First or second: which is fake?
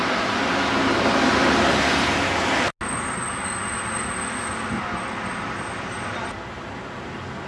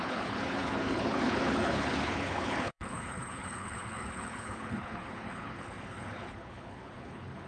second